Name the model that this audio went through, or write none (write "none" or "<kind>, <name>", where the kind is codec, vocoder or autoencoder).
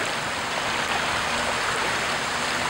none